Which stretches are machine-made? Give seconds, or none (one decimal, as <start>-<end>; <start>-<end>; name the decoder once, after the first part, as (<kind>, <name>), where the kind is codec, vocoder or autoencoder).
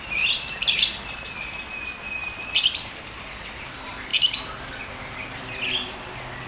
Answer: 2.2-3.0 (vocoder, BigVGAN v2); 4.1-5.6